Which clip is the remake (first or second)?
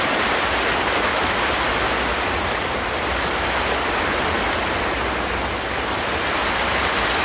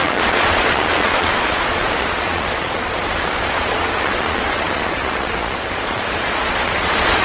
second